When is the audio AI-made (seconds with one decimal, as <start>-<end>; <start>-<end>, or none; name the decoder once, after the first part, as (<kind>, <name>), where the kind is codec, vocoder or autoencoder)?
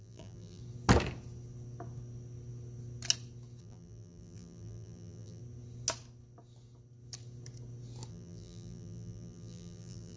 0.0-0.6 (vocoder, BigVGAN v2); 3.6-5.4; 8.1-10.2